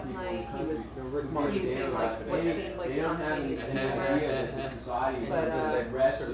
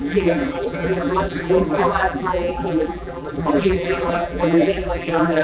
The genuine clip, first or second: first